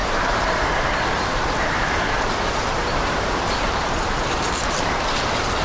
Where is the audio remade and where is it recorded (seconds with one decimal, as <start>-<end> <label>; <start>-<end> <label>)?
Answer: 0.0-5.6 remade